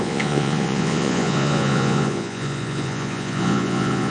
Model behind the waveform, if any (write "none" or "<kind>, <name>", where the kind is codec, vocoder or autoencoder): vocoder, Vocos